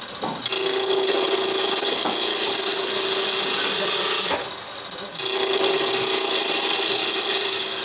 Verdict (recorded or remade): recorded